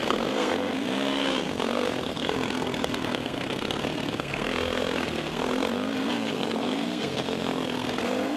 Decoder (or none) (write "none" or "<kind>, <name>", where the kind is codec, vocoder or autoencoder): codec, SNAC